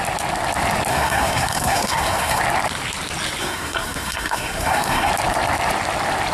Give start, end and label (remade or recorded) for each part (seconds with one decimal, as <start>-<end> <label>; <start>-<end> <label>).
0.0-0.9 recorded; 0.9-2.4 remade; 2.4-3.4 recorded; 3.4-5.1 remade; 5.1-6.3 recorded